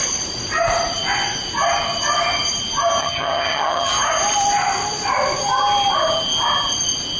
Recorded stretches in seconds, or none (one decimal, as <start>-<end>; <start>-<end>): 0.0-3.0; 3.9-7.2